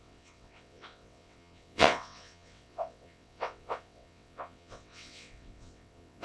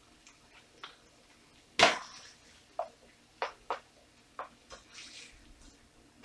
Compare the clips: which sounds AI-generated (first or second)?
first